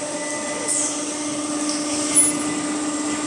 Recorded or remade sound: recorded